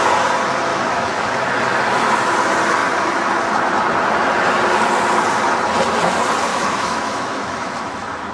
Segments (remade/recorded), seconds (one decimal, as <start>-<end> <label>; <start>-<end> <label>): 0.0-0.7 recorded; 0.7-1.5 remade; 1.5-6.5 recorded; 6.5-8.3 remade